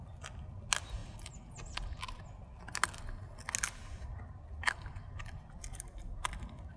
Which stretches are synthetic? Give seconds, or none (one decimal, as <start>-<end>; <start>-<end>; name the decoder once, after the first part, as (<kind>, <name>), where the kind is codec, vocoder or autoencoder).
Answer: none